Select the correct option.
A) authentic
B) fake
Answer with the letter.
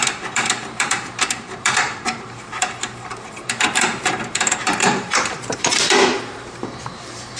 B